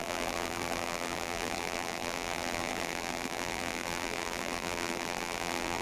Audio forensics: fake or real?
fake